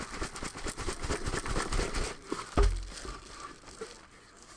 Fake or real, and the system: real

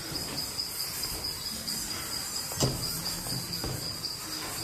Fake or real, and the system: real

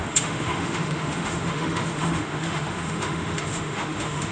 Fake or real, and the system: fake, autoencoder, DAC-VAE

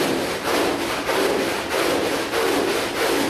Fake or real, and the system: real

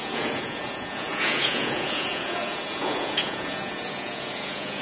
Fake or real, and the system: fake, vocoder, Vocos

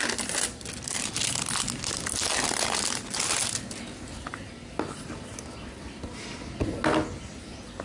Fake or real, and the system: real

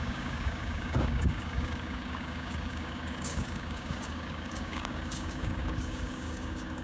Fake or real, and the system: fake, codec, DAC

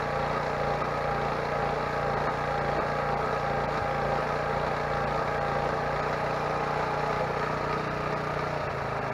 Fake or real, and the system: real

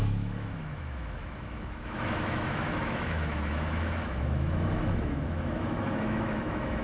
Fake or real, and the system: fake, autoencoder, DAC-VAE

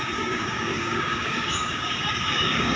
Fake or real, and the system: fake, codec, DAC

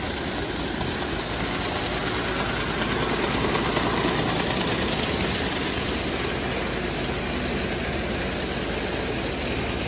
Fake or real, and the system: real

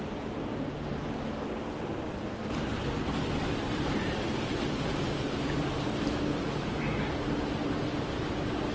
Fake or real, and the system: real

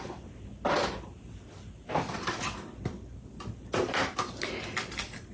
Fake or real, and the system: real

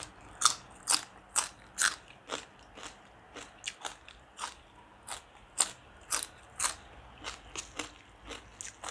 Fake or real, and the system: real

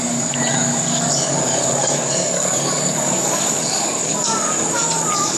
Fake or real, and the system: fake, codec, DAC